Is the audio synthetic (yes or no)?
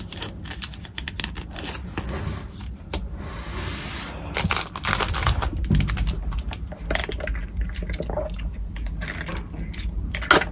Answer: no